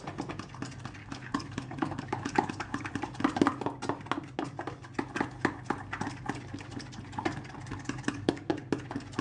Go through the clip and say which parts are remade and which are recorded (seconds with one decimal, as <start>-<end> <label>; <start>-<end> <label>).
0.0-1.0 recorded; 1.0-2.9 remade; 2.9-7.7 recorded; 7.7-8.5 remade; 8.5-9.2 recorded